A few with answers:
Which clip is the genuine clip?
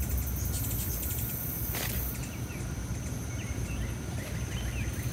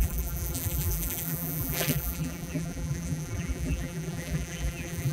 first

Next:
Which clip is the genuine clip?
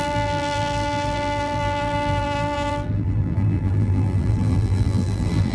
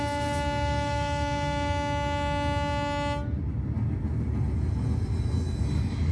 second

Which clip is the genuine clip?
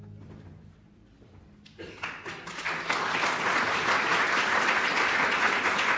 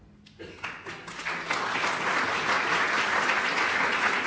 second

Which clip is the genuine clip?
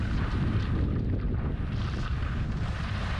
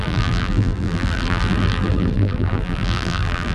first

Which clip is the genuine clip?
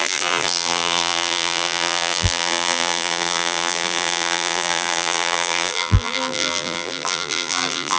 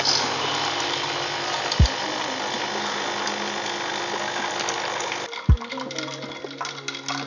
second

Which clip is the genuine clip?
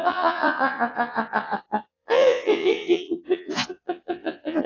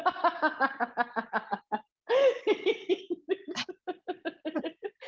second